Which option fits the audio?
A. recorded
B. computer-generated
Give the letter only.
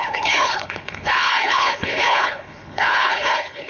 B